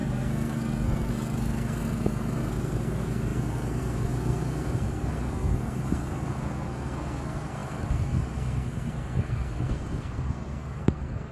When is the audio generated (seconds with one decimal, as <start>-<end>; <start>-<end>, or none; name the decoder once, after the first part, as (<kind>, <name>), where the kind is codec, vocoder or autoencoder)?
0.0-11.3 (codec, SNAC)